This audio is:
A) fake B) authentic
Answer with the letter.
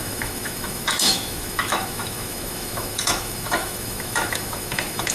A